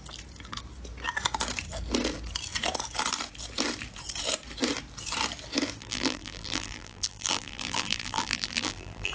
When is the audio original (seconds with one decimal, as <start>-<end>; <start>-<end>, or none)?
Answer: 0.0-5.8